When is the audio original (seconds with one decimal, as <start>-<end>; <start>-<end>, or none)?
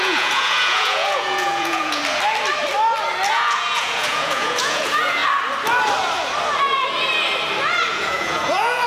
2.0-3.3; 5.2-7.9